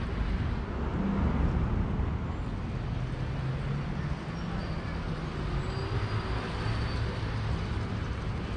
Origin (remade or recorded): recorded